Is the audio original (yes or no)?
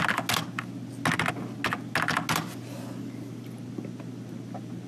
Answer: yes